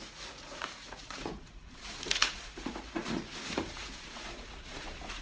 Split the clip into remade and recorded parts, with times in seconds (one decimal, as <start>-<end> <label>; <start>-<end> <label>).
0.0-5.2 remade